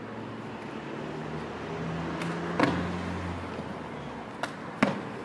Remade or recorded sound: recorded